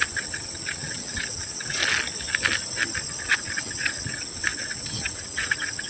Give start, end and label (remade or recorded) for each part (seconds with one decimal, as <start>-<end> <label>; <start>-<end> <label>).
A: 0.0-1.8 remade; 1.8-3.2 recorded; 3.2-5.9 remade